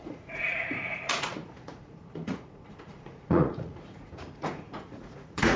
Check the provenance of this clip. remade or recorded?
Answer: remade